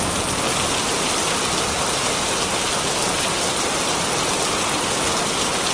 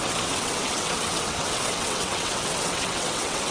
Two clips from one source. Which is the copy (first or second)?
second